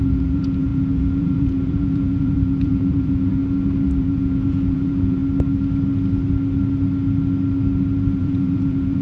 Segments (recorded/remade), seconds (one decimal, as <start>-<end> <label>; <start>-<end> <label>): 0.0-3.4 remade; 3.4-4.0 recorded; 4.0-5.2 remade; 5.2-8.2 recorded; 8.2-9.0 remade